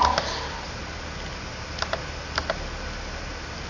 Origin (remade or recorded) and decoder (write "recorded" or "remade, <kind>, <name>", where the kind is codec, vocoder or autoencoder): recorded